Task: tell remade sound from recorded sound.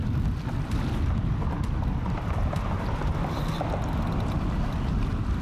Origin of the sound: recorded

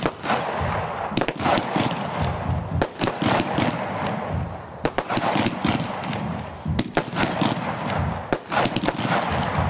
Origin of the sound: recorded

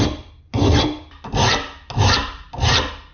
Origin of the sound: recorded